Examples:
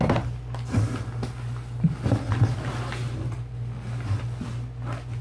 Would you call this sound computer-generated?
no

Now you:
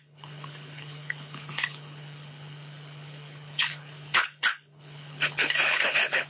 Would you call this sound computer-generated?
yes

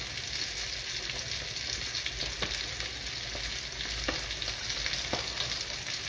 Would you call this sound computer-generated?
no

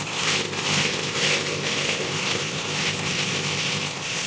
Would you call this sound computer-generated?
yes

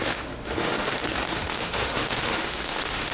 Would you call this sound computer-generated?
yes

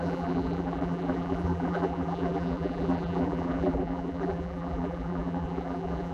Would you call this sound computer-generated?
yes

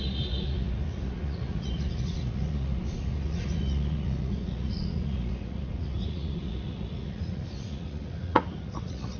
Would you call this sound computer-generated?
yes